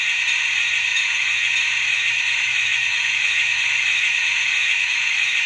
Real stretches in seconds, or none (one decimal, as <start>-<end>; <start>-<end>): 0.0-0.9; 1.5-1.9